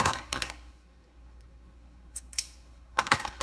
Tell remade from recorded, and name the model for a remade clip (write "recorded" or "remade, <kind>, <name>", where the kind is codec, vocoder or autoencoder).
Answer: remade, codec, SNAC